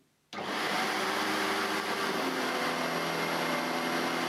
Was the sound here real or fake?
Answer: real